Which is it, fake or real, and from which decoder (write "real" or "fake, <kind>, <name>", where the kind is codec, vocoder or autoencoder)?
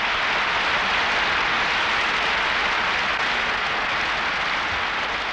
real